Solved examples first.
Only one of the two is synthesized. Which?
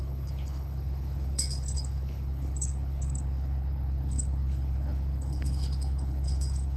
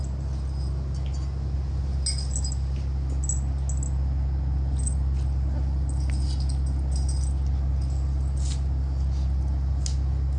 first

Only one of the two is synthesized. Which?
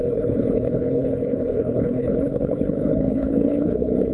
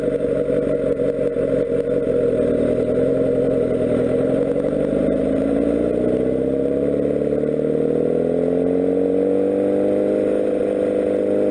first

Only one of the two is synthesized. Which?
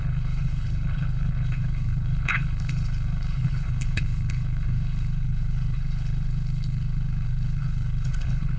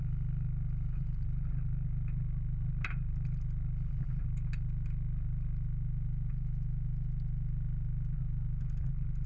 first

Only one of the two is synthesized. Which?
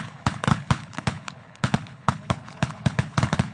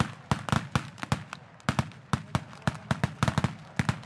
first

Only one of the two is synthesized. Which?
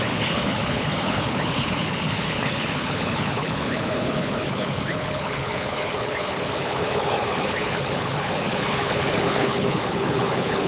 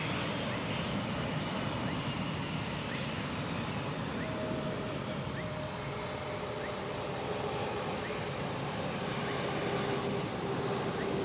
first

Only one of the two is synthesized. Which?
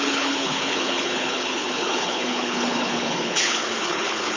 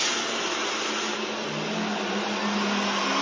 first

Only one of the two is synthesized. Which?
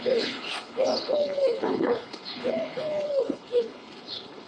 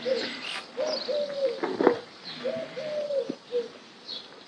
first